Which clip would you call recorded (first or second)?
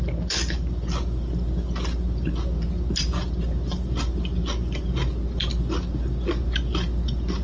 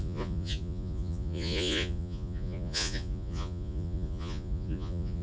first